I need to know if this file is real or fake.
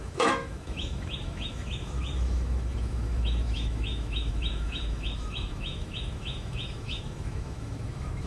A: fake